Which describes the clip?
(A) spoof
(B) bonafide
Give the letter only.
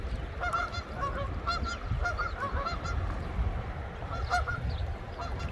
B